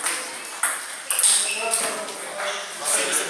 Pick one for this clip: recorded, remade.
recorded